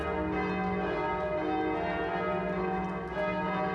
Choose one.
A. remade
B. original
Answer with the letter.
B